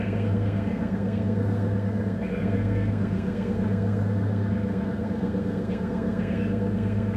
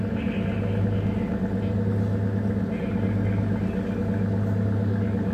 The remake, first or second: first